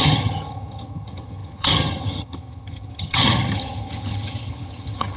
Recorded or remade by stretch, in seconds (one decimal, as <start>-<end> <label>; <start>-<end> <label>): 0.0-5.2 remade